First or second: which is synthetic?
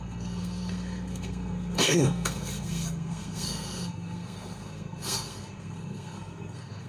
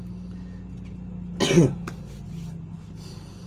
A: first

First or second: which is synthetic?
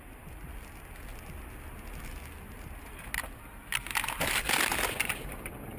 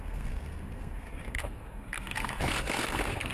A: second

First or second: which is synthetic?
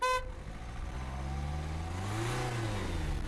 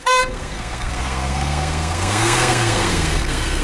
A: second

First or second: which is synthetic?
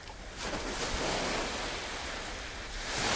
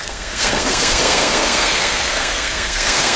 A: second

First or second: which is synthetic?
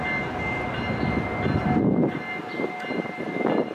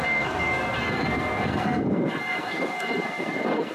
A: second